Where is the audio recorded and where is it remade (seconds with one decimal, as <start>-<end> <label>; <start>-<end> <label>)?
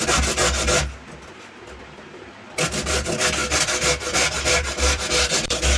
0.0-5.8 recorded